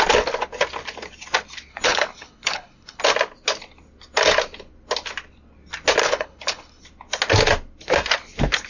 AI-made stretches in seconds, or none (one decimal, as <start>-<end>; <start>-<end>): 1.7-3.0; 6.0-6.8